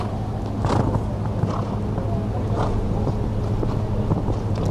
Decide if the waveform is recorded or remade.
recorded